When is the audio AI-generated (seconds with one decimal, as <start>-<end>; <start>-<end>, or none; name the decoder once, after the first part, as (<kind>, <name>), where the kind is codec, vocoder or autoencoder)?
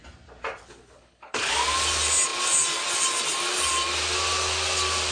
0.6-1.5 (codec, HILCodec)